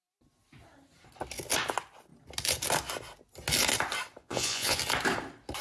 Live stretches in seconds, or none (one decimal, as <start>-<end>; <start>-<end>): 0.0-4.2; 4.8-5.6